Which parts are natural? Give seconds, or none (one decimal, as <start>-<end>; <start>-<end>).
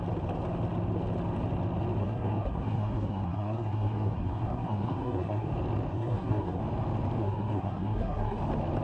0.0-2.0; 5.5-5.9; 6.6-7.2; 8.4-8.8